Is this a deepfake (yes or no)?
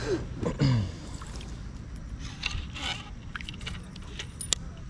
no